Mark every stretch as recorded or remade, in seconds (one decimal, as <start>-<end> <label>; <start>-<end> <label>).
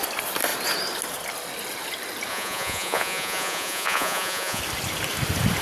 0.0-2.3 recorded; 2.3-4.6 remade; 4.6-5.6 recorded